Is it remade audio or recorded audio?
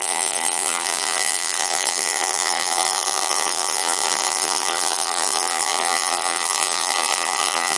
remade